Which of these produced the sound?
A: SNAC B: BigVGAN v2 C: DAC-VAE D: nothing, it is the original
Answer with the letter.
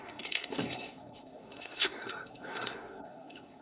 A